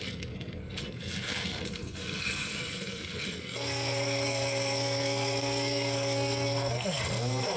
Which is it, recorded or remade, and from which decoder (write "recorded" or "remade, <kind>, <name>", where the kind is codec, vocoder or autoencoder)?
remade, codec, SNAC